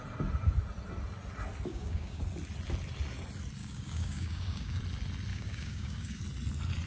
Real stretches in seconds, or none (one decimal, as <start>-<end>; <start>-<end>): 0.0-1.7; 2.2-3.6; 4.8-5.3; 6.2-6.9

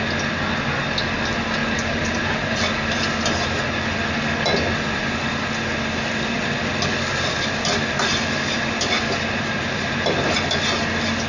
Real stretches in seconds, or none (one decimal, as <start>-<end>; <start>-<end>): 0.0-11.3

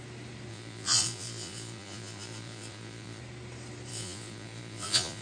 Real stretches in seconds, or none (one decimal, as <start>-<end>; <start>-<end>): 0.0-0.5; 3.2-3.9

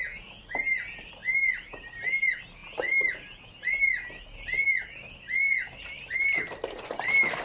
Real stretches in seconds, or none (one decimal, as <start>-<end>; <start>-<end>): 0.0-7.4

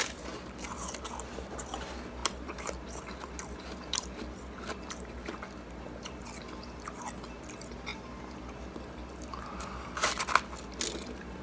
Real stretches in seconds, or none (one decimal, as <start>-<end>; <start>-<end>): 0.0-11.4

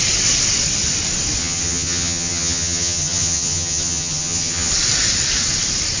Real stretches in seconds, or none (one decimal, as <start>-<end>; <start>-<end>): 0.0-1.4; 4.7-6.0

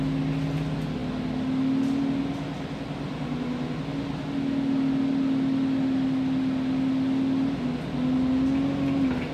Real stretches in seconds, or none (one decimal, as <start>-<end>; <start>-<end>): 0.0-9.3